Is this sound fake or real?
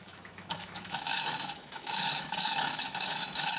fake